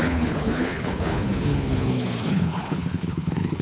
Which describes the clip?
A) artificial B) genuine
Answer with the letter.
A